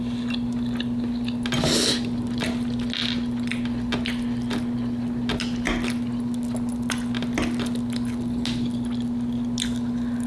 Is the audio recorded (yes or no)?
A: yes